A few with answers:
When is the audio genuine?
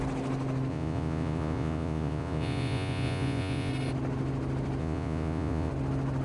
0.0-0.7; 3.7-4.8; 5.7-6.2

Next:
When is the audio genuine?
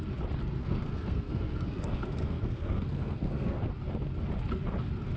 0.0-0.6; 3.7-5.2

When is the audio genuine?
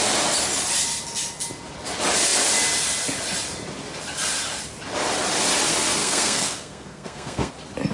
0.0-6.0; 7.5-7.9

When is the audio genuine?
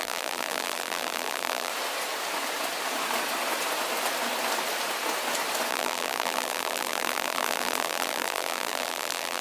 1.7-5.7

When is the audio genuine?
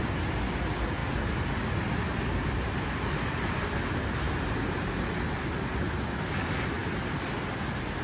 0.0-8.0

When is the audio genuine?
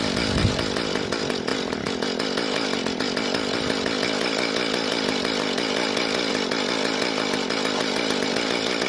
0.0-8.9